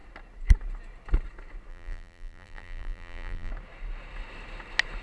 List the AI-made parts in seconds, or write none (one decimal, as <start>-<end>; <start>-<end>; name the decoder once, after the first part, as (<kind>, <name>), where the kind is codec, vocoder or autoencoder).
1.7-3.5 (vocoder, BigVGAN v2)

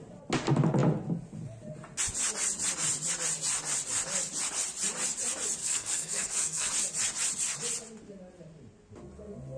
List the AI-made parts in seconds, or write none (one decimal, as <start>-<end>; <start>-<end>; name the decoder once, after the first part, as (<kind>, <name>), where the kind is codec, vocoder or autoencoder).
5.6-6.7 (codec, SNAC)

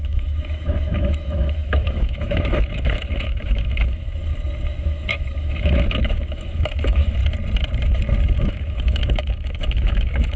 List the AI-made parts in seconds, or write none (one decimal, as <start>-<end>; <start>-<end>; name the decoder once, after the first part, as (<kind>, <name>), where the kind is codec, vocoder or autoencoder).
0.0-4.2 (autoencoder, DAC-VAE); 4.8-7.2; 8.5-10.4

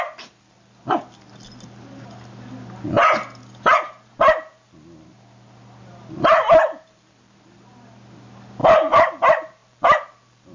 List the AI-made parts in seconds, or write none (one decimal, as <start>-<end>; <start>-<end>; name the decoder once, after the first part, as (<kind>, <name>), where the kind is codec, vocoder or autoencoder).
none

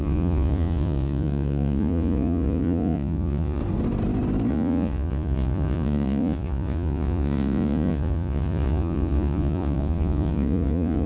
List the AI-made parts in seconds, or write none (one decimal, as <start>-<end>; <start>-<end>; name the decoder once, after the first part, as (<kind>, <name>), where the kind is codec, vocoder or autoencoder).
0.0-3.6 (vocoder, Vocos); 4.5-11.1